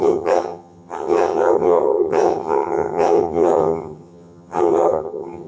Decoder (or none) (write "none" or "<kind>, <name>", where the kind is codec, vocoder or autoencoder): vocoder, HiFi-GAN